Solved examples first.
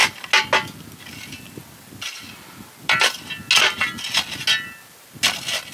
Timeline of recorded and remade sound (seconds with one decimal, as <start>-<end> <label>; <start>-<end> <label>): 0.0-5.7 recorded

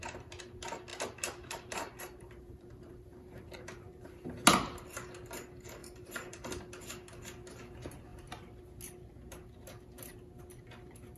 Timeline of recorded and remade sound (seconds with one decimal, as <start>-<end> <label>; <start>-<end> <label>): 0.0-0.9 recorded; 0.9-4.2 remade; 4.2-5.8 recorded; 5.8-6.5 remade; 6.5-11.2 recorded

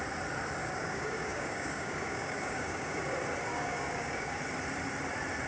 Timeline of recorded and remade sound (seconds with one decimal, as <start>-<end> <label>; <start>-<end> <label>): 0.0-0.6 recorded; 0.6-3.0 remade; 3.0-3.5 recorded; 3.5-4.4 remade; 4.4-5.5 recorded